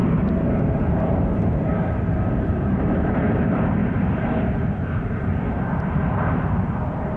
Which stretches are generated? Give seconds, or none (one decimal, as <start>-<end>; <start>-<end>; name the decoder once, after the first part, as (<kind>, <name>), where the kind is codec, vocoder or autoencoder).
0.0-1.7 (vocoder, BigVGAN v2); 2.5-7.2